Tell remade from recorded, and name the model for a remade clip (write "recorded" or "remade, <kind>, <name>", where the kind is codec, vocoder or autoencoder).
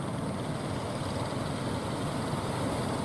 recorded